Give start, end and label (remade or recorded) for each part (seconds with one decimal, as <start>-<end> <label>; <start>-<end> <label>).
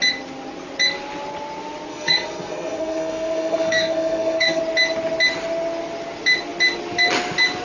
0.0-1.9 recorded; 1.9-4.6 remade; 4.6-7.6 recorded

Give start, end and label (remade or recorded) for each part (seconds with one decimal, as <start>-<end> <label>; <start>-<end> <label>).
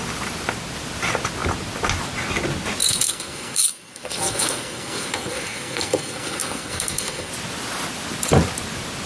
0.0-2.8 recorded; 2.8-7.3 remade; 7.3-9.1 recorded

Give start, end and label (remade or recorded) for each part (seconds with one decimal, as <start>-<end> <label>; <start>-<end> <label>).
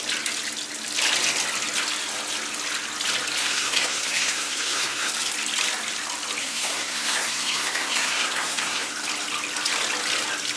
0.0-3.4 recorded; 3.4-5.1 remade; 5.1-6.4 recorded; 6.4-8.9 remade; 8.9-10.6 recorded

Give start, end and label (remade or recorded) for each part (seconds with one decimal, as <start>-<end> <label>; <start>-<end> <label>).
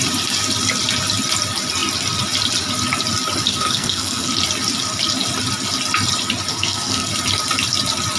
0.0-3.5 recorded; 3.5-4.3 remade; 4.3-6.5 recorded; 6.5-7.1 remade; 7.1-8.2 recorded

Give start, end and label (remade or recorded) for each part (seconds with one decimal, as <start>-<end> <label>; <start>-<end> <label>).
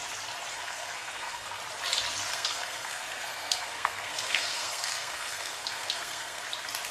0.0-0.5 recorded; 0.5-1.6 remade; 1.6-2.3 recorded; 2.3-6.4 remade; 6.4-6.9 recorded